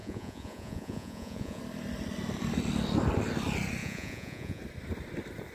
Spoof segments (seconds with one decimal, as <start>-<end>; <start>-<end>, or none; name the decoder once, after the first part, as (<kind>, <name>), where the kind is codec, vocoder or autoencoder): 0.0-1.6 (vocoder, Vocos); 3.8-4.6